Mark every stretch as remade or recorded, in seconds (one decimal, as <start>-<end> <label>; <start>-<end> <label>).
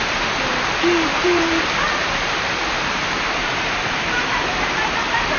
0.0-0.5 recorded; 0.5-1.6 remade; 1.6-2.0 recorded; 2.0-5.4 remade